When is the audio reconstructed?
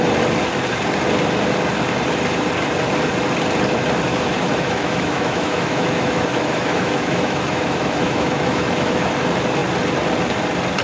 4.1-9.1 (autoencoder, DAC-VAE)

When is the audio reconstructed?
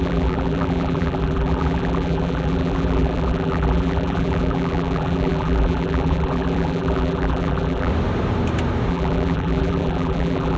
0.0-7.9 (vocoder, BigVGAN v2); 8.9-10.6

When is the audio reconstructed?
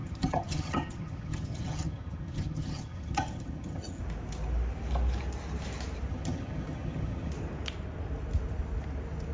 0.0-4.0 (vocoder, HiFi-GAN); 6.1-7.3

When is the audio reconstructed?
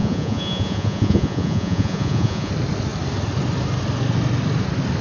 0.0-2.5 (vocoder, Vocos)